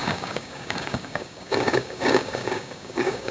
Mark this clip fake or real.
fake